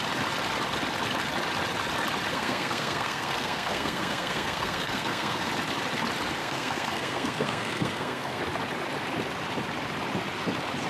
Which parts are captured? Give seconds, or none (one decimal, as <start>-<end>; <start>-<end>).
0.0-2.3; 5.5-6.4; 8.4-10.9